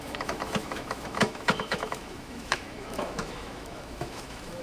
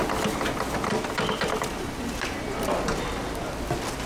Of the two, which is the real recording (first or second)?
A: second